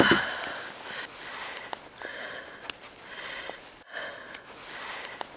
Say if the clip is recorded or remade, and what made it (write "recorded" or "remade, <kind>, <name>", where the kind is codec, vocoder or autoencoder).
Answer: recorded